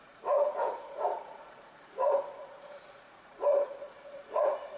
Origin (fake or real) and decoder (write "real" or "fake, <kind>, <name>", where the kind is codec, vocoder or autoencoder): fake, vocoder, Vocos